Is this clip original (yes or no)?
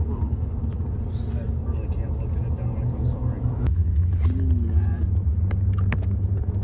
yes